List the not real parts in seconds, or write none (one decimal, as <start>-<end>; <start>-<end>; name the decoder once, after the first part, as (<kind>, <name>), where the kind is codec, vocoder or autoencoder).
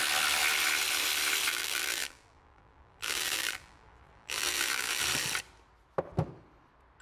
1.5-5.0 (vocoder, BigVGAN v2)